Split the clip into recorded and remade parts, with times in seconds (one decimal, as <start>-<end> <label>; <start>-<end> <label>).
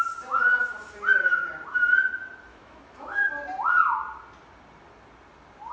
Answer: 0.0-2.5 recorded; 2.5-3.3 remade; 3.3-5.7 recorded